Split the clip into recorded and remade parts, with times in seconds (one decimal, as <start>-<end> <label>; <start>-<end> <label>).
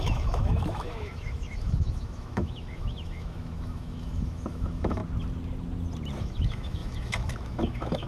0.0-5.0 remade; 5.0-6.2 recorded; 6.2-8.1 remade